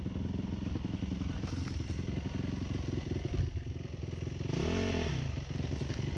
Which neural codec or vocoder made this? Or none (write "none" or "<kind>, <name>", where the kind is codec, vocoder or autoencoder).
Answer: none